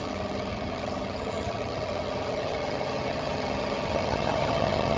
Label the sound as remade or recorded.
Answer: remade